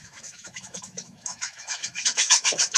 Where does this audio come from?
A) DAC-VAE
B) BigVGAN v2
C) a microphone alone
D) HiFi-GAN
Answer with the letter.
A